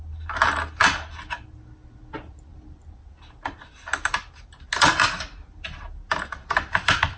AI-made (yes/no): no